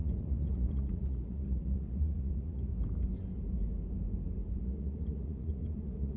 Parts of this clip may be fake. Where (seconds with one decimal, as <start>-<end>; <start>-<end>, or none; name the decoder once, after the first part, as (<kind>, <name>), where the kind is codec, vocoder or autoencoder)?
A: 0.0-2.7 (vocoder, Vocos); 4.6-6.2